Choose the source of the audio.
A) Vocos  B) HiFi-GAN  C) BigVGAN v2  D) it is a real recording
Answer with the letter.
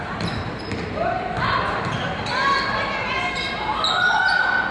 D